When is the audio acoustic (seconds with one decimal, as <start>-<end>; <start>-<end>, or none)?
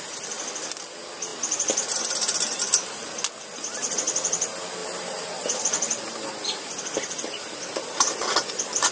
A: 0.0-8.9